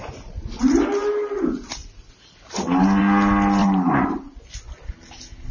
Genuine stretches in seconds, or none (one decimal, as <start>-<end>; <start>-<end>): 0.6-3.6; 4.4-5.5